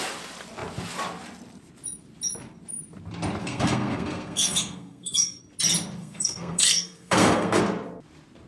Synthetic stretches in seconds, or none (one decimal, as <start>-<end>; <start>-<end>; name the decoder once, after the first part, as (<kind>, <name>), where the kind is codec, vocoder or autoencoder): 3.4-5.4 (codec, SNAC); 6.0-7.6